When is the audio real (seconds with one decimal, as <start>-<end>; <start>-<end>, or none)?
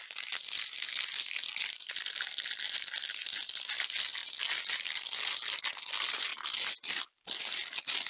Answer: 0.0-4.2; 5.6-6.3; 7.4-8.1